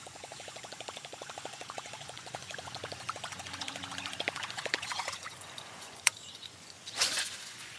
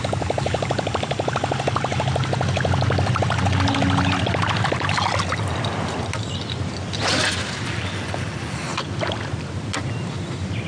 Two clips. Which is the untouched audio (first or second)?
second